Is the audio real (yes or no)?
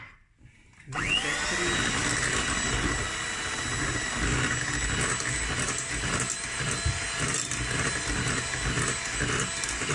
yes